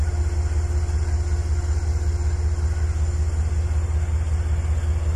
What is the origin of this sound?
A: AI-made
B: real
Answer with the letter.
B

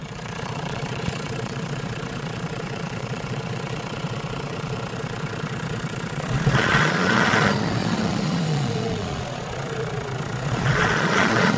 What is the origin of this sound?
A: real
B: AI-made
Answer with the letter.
B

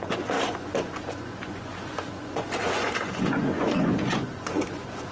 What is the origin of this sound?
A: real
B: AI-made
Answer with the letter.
B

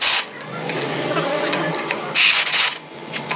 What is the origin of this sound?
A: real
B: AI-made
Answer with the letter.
B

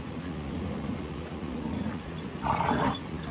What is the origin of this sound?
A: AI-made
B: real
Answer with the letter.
A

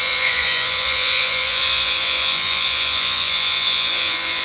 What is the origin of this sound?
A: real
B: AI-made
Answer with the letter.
B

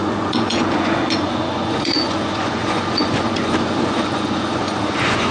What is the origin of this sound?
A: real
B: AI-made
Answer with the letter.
B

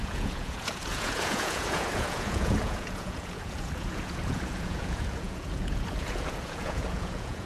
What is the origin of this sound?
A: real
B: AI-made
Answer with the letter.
B